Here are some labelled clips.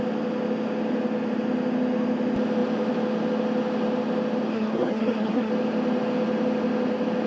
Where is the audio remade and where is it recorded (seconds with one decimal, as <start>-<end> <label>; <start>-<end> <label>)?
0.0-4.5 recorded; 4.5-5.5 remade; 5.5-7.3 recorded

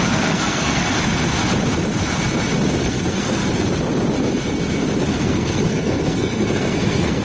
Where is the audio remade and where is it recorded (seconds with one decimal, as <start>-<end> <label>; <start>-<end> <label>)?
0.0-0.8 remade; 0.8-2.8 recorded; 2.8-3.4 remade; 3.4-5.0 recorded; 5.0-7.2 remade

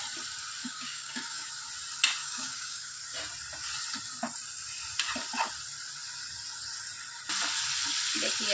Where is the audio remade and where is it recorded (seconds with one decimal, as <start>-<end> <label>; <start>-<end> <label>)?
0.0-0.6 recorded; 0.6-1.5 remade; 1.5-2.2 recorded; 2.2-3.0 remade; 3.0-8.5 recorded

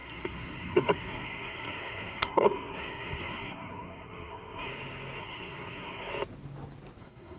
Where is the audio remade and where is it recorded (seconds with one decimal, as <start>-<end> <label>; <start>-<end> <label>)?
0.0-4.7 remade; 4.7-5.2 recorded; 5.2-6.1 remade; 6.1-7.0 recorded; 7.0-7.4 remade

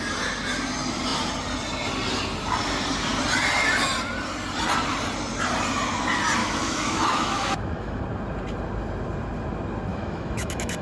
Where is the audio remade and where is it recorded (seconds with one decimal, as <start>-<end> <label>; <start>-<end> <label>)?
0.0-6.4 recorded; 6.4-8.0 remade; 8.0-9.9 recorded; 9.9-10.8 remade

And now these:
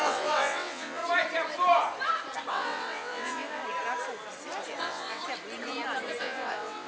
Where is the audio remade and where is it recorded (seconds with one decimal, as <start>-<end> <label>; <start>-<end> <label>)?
0.0-1.0 remade; 1.0-2.5 recorded; 2.5-3.6 remade; 3.6-4.8 recorded; 4.8-5.2 remade; 5.2-6.2 recorded; 6.2-6.9 remade